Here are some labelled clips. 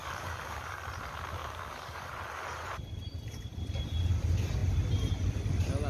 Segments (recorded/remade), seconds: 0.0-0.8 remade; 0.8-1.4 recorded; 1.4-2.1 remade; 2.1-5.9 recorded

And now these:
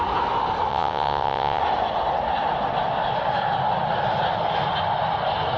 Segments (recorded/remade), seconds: 0.0-0.7 recorded; 0.7-1.6 remade; 1.6-5.6 recorded

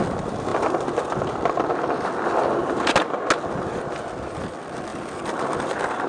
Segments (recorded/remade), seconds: 0.0-6.1 recorded

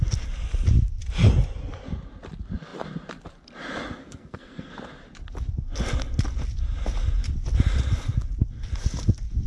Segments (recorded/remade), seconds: 0.0-4.0 recorded; 4.0-4.7 remade; 4.7-9.5 recorded